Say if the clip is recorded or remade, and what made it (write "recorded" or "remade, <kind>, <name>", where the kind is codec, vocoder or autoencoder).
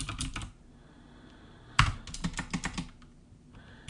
recorded